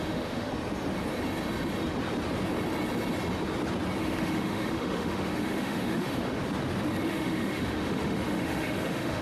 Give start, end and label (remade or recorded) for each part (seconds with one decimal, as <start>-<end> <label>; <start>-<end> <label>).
0.0-0.5 remade; 0.5-4.0 recorded; 4.0-6.4 remade; 6.4-7.1 recorded; 7.1-9.2 remade